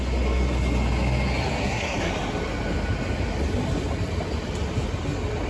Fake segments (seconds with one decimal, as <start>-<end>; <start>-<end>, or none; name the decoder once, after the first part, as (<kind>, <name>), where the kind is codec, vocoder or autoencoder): 1.6-2.1 (codec, SNAC)